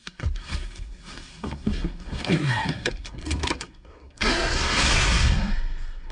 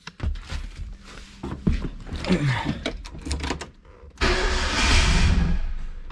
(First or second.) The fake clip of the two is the first